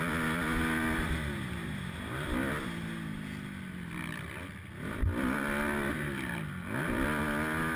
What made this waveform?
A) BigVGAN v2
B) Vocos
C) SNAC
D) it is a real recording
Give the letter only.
D